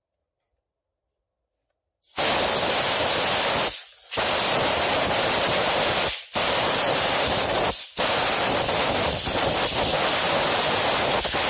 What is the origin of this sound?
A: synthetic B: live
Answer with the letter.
B